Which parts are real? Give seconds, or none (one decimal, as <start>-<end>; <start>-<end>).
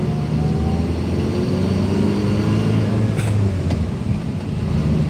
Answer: 0.0-5.1